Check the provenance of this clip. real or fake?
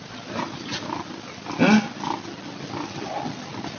real